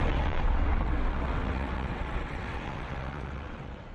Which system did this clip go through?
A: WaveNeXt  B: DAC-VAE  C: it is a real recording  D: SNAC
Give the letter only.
A